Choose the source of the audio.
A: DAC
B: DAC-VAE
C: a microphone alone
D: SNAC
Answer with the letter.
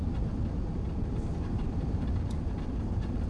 C